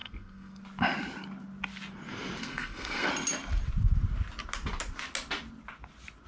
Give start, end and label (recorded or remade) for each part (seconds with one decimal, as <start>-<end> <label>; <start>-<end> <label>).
0.0-0.6 remade; 0.6-2.4 recorded; 2.4-3.1 remade; 3.1-6.3 recorded